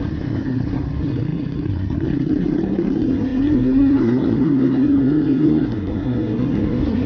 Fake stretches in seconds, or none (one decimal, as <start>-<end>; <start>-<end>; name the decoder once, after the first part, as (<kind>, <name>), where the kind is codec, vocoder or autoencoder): 0.0-7.1 (codec, SNAC)